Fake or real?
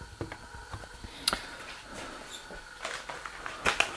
real